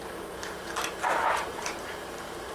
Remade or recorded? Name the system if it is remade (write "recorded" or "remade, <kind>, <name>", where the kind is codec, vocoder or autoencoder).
remade, vocoder, BigVGAN v2